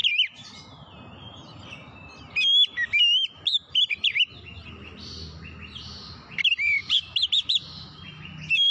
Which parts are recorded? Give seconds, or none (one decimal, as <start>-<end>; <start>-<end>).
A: 0.0-8.7